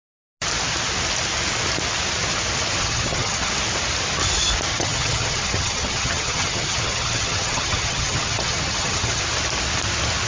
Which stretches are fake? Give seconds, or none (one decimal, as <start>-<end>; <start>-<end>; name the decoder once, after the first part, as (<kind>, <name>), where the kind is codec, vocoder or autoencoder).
2.8-3.5 (vocoder, HiFi-GAN); 4.7-9.2